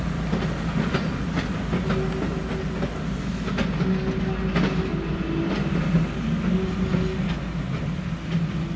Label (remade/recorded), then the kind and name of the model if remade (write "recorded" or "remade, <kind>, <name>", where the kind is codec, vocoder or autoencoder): recorded